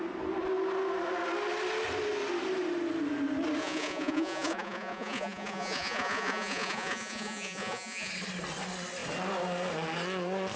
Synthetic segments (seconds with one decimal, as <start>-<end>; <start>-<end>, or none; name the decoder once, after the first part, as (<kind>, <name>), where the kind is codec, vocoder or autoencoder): 3.6-8.1 (vocoder, Vocos)